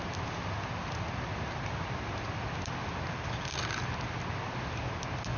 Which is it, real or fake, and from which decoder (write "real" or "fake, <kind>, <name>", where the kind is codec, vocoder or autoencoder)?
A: real